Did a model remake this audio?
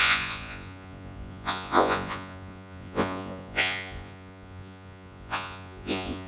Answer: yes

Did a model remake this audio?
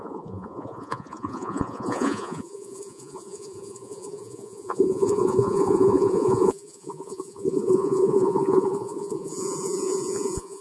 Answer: yes